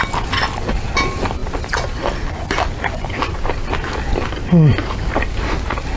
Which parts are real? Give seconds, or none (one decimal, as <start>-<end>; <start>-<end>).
0.0-6.0

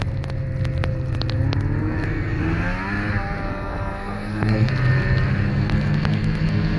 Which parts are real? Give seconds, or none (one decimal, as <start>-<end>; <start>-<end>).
0.0-1.8; 2.4-3.5; 4.7-5.5

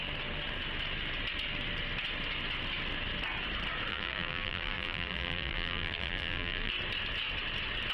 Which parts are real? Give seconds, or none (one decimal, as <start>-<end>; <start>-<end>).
0.0-3.9; 6.7-7.9

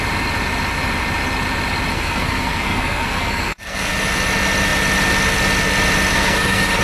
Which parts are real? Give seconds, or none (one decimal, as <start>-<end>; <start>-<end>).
0.0-1.9; 3.9-6.1

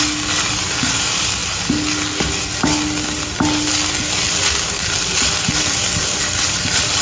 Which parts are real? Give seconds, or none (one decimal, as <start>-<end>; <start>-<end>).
0.0-7.0

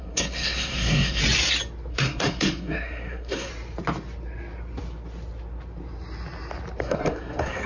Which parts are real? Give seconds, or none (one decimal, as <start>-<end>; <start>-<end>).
1.2-1.9; 3.5-6.8